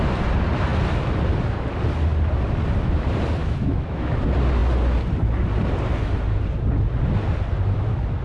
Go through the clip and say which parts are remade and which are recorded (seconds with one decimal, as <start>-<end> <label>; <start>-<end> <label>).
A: 0.0-3.4 recorded; 3.4-4.1 remade; 4.1-8.2 recorded

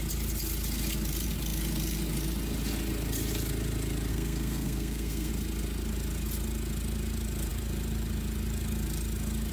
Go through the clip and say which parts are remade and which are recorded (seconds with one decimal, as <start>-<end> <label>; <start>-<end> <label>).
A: 0.0-4.1 recorded; 4.1-5.3 remade; 5.3-9.5 recorded